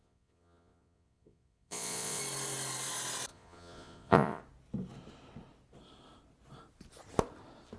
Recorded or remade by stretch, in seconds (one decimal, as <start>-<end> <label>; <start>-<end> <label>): 0.0-2.2 remade; 2.2-3.3 recorded; 3.3-4.4 remade; 4.4-7.8 recorded